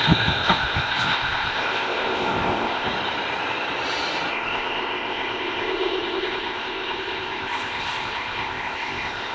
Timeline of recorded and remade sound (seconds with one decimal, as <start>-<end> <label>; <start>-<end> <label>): 0.0-2.9 remade; 2.9-4.3 recorded; 4.3-9.3 remade